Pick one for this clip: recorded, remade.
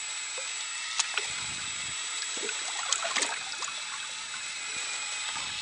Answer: recorded